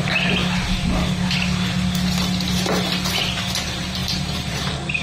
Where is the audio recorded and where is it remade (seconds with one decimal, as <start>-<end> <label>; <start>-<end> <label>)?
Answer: 0.0-4.0 recorded; 4.0-4.6 remade; 4.6-5.0 recorded